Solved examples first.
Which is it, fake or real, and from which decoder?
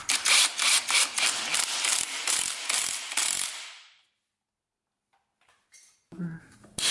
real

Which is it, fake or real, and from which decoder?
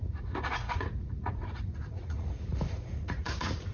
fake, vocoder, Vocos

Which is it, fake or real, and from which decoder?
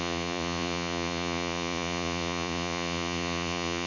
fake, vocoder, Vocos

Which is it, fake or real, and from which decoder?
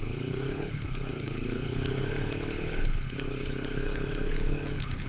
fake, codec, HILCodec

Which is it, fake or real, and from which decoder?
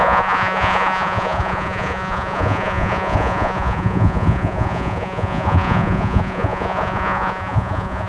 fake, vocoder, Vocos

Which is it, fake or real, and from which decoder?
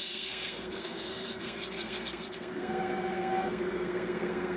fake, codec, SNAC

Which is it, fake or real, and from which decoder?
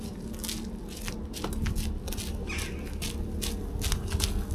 real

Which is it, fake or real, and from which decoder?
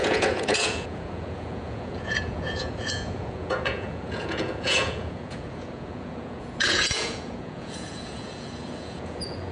fake, vocoder, Vocos